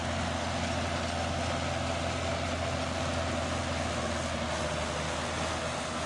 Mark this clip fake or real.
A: real